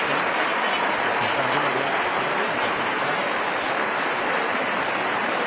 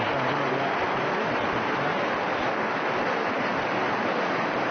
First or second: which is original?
second